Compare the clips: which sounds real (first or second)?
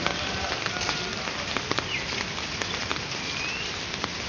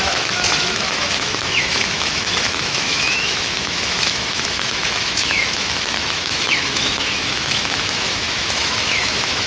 first